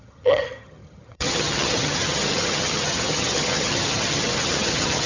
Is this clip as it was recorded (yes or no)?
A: no